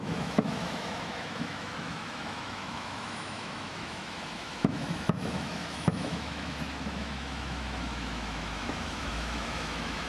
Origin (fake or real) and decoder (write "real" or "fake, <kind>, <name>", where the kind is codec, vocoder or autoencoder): fake, autoencoder, DAC-VAE